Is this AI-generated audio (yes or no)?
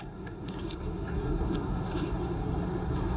yes